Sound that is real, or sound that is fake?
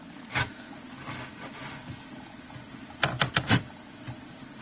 real